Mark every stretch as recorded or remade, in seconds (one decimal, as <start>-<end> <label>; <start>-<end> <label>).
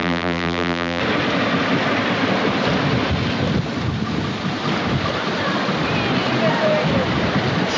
0.0-1.0 remade; 1.0-7.8 recorded